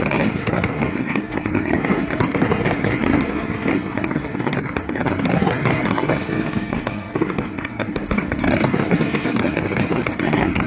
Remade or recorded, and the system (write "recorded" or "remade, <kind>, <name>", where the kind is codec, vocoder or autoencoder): remade, codec, SNAC